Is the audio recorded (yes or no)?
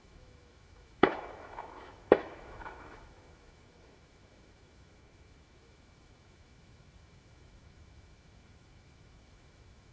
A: no